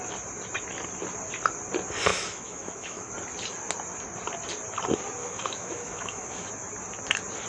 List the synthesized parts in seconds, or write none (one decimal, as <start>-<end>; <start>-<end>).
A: 2.1-3.1; 5.2-6.5